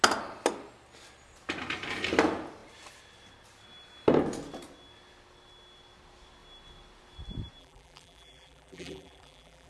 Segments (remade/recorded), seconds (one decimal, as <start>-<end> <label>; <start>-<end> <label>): 0.0-7.6 recorded; 7.6-9.7 remade